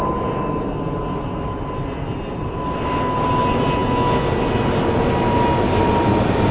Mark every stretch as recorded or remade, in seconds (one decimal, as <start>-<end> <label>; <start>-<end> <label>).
0.0-6.5 recorded